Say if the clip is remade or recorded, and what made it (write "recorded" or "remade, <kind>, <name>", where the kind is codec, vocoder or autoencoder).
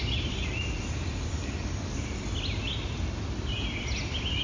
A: recorded